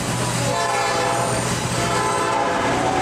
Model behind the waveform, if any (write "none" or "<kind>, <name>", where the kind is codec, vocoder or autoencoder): none